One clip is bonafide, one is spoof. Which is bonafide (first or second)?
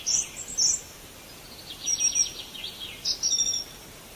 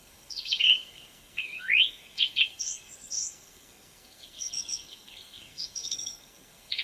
first